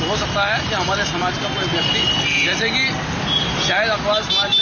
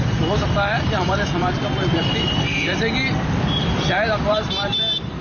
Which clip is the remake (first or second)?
second